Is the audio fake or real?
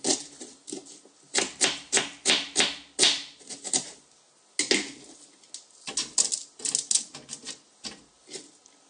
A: real